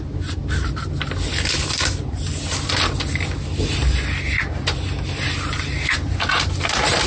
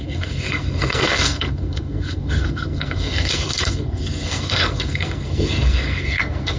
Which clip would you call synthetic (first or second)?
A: second